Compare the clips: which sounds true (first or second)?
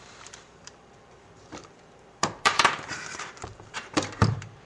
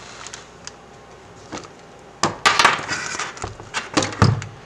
second